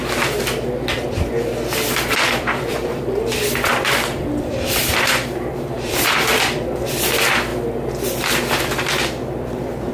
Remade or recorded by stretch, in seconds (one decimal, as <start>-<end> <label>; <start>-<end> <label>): 0.0-2.1 recorded; 2.1-7.5 remade; 7.5-8.6 recorded; 8.6-9.9 remade